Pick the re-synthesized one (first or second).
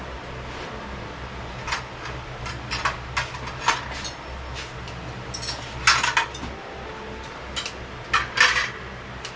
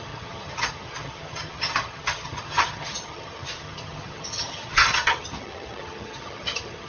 second